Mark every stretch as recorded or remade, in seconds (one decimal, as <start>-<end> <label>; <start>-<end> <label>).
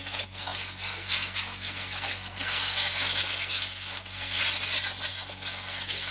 0.0-4.4 remade; 4.4-5.1 recorded; 5.1-6.1 remade